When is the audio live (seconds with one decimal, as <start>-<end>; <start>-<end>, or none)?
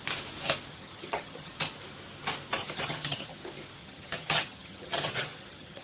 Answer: 0.0-0.7; 1.5-2.6; 3.4-3.8